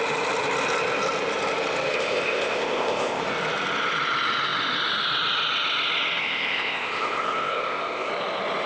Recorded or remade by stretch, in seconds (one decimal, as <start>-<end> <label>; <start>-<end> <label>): 0.0-1.9 recorded; 1.9-3.2 remade; 3.2-6.2 recorded; 6.2-8.1 remade; 8.1-8.7 recorded

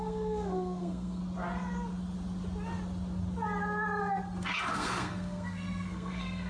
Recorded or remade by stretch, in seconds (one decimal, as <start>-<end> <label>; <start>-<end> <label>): 0.0-1.2 remade; 1.2-4.7 recorded; 4.7-6.5 remade

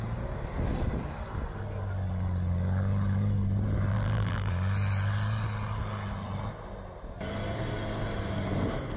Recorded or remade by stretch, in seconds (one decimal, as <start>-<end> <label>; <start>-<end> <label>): 0.0-3.9 recorded; 3.9-4.5 remade; 4.5-9.0 recorded

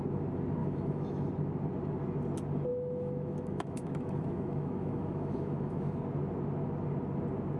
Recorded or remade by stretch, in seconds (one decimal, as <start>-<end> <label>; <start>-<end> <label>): 0.0-0.6 recorded; 0.6-1.3 remade; 1.3-2.7 recorded; 2.7-6.0 remade; 6.0-7.6 recorded

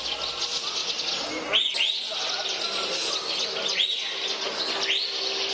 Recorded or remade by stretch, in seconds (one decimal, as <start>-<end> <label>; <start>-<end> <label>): 0.0-5.5 recorded

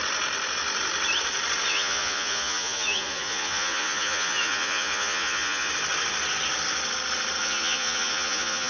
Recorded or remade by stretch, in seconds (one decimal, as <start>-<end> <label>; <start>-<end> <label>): 0.0-1.7 recorded; 1.7-5.7 remade; 5.7-7.4 recorded; 7.4-8.7 remade

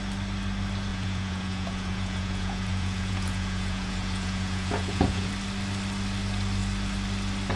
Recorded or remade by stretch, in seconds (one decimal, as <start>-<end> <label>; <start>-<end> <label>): 0.0-0.9 recorded; 0.9-5.3 remade; 5.3-7.6 recorded

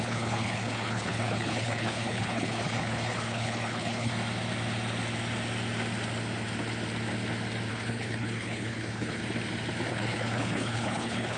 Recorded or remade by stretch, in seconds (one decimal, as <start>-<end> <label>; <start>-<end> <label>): 0.0-4.1 remade; 4.1-7.7 recorded; 7.7-9.2 remade; 9.2-9.9 recorded; 9.9-11.4 remade